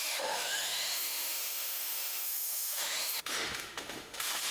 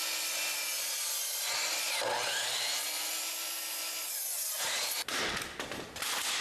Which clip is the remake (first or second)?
first